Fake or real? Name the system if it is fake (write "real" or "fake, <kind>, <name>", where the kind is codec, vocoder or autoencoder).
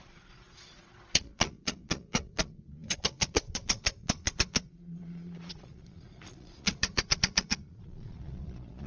fake, vocoder, Vocos